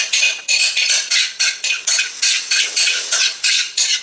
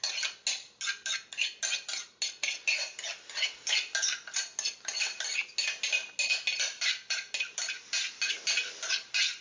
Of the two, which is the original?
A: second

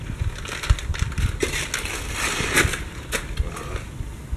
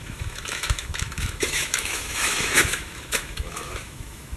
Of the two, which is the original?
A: first